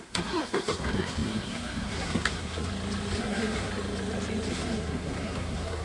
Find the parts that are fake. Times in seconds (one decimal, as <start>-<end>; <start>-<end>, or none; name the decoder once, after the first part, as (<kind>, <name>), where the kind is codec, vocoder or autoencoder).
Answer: 0.0-2.7 (codec, SNAC); 3.2-3.7; 4.5-5.8